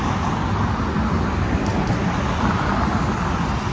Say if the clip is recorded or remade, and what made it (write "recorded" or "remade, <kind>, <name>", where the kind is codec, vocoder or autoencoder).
recorded